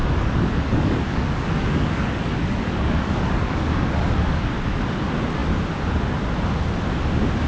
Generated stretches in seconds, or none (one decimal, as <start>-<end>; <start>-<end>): 0.0-4.5